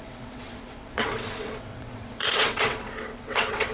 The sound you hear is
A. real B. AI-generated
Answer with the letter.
B